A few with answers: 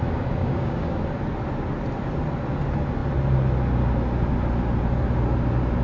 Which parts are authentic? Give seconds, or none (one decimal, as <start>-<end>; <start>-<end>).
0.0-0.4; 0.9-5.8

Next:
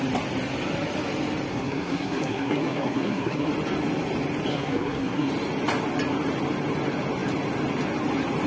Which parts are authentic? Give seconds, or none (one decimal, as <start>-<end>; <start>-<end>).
0.0-1.5; 3.5-4.5; 5.3-8.5

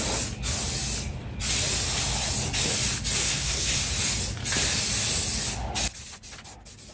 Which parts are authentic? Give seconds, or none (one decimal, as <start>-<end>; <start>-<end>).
0.0-3.2; 3.8-6.9

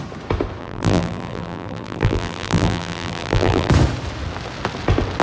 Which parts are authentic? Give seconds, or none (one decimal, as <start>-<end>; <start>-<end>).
0.0-0.6; 3.7-5.2

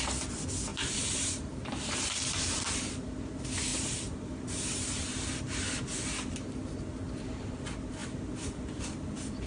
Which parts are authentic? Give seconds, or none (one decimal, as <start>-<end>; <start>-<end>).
0.0-0.7; 2.6-3.7; 5.1-8.0; 8.8-9.5

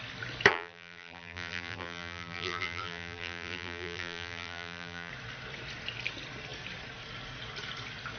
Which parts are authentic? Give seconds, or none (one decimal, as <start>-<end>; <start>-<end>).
0.0-0.5; 5.1-8.2

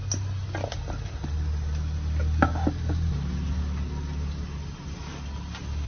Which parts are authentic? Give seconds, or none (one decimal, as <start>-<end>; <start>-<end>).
0.0-5.9

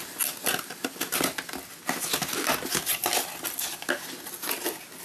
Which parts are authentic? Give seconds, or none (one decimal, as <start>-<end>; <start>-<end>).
0.0-5.0